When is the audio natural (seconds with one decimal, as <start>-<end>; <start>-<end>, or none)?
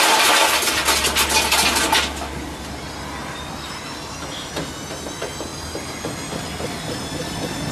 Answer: 0.0-7.7